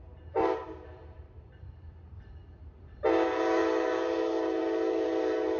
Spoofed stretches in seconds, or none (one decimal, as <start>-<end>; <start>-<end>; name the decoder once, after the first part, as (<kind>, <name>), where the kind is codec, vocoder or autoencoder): 0.0-5.6 (vocoder, BigVGAN v2)